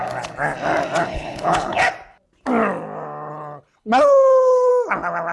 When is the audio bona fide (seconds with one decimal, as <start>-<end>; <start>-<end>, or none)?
0.0-1.0; 1.8-3.3; 4.7-5.3